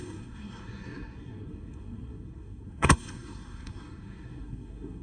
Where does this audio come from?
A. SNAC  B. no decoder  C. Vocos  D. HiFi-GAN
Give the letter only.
A